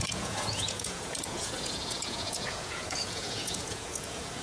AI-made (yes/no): yes